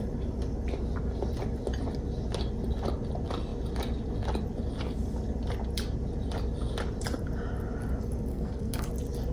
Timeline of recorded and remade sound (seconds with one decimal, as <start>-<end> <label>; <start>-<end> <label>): 0.0-8.3 recorded; 8.3-8.9 remade; 8.9-9.3 recorded